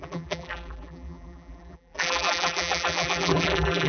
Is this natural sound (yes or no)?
no